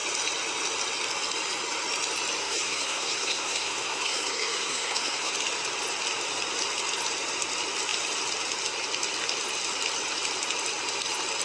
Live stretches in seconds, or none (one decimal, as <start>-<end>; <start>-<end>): 0.0-2.4; 5.3-11.4